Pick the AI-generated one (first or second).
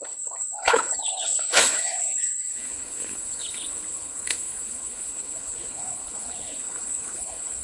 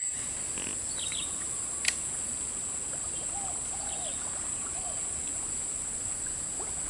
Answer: first